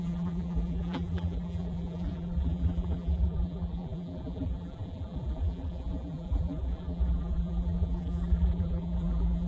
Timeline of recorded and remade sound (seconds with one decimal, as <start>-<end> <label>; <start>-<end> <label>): 0.0-9.5 remade